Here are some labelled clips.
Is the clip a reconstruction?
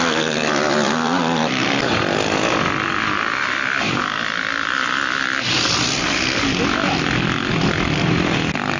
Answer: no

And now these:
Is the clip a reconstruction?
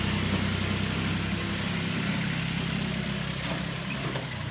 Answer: no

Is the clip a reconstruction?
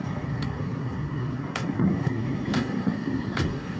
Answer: yes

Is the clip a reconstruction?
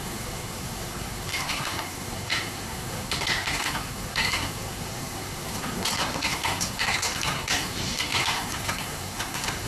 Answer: yes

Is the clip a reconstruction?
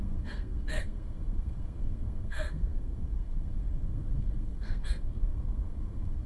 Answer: yes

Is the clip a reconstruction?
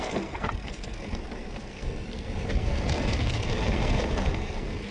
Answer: yes